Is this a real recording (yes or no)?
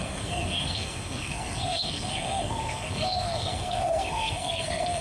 no